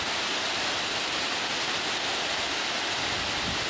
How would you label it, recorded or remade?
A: recorded